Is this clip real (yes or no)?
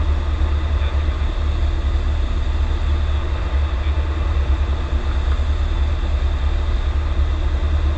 yes